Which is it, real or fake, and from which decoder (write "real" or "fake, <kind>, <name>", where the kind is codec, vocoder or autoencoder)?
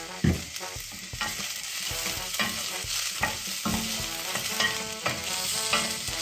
real